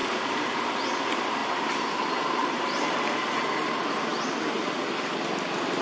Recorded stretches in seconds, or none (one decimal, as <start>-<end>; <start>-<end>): 0.7-1.4; 1.9-2.4; 3.0-5.8